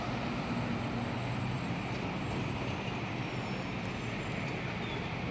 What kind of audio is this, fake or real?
real